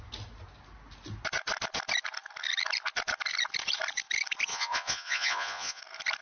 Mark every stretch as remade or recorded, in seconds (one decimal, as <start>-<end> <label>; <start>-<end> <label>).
0.0-4.5 recorded; 4.5-5.8 remade; 5.8-6.2 recorded